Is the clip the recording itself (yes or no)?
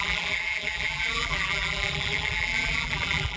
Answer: no